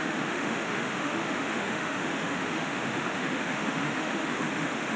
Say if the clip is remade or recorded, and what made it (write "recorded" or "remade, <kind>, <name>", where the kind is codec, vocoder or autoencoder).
remade, autoencoder, DAC-VAE